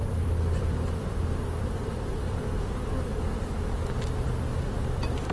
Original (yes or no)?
no